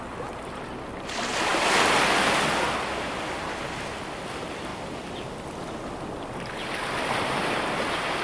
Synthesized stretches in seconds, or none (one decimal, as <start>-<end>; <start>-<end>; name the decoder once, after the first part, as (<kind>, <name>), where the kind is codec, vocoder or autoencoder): none